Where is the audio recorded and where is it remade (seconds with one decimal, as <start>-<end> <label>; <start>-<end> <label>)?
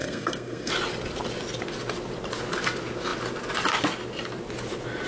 0.0-0.7 remade; 0.7-5.1 recorded